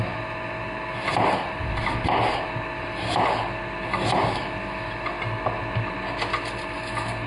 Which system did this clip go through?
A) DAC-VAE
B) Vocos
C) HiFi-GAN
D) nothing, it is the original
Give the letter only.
D